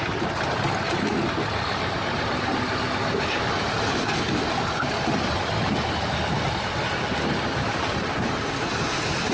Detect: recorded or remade recorded